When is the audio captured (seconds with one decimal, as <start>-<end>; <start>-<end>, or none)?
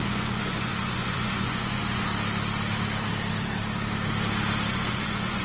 2.1-4.7